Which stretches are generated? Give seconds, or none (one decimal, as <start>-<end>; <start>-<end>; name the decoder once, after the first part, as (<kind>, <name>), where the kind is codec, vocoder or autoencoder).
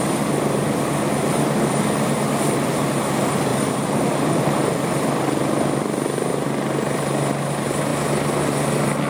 3.5-4.4 (vocoder, BigVGAN v2)